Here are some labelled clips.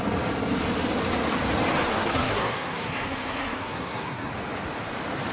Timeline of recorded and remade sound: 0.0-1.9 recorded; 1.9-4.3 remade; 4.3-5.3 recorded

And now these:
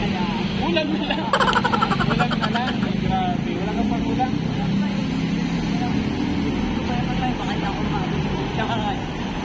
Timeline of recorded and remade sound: 0.0-9.4 recorded

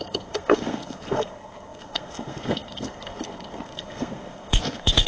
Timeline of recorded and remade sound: 0.0-5.1 remade

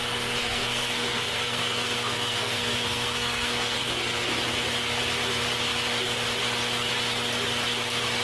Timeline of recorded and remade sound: 0.0-0.4 recorded; 0.4-4.3 remade; 4.3-8.2 recorded

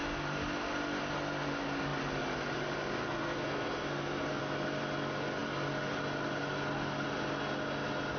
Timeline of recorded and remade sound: 0.0-3.0 recorded; 3.0-4.4 remade; 4.4-8.2 recorded

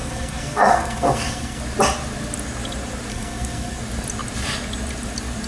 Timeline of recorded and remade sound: 0.0-1.6 remade; 1.6-3.1 recorded; 3.1-3.8 remade; 3.8-5.5 recorded

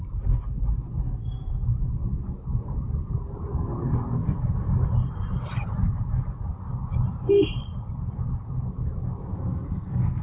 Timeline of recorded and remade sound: 0.0-9.3 recorded; 9.3-10.2 remade